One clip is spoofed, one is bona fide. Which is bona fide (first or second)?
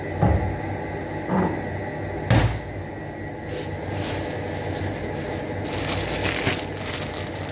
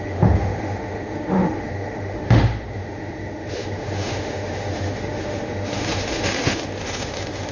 first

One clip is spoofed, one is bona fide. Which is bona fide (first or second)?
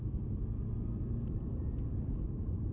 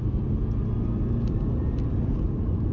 second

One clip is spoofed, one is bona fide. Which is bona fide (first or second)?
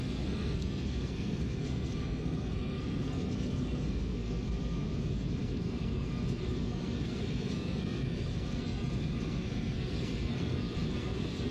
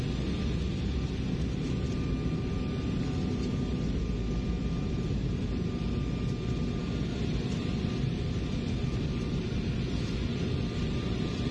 second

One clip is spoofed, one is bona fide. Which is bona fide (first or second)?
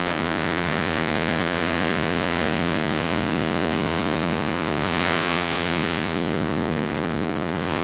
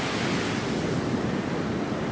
second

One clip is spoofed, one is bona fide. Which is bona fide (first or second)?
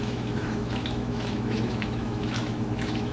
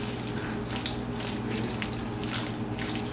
second